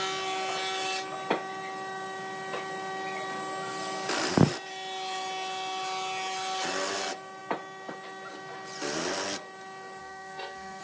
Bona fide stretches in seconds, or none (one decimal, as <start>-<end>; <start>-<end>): 0.0-10.0